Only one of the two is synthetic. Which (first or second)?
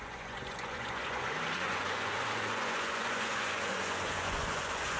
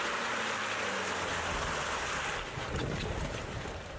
first